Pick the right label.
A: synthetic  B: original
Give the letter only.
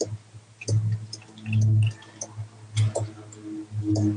B